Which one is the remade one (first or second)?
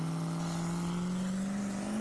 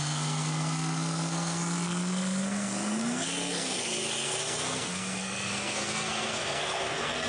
second